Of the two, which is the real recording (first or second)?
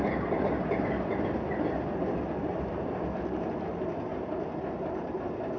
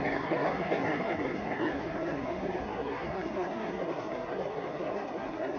first